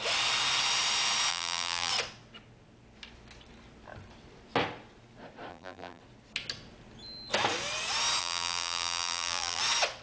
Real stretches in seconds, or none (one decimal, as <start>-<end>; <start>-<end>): 0.0-1.3; 1.9-5.5; 6.0-8.2; 9.6-10.0